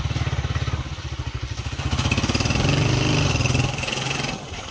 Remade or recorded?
recorded